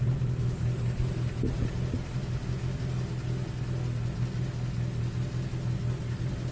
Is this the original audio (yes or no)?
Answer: yes